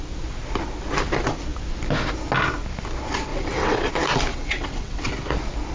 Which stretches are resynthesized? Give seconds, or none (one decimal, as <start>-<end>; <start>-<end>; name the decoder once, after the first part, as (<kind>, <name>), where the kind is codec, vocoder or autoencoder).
3.3-3.9 (vocoder, WaveNeXt); 4.3-5.1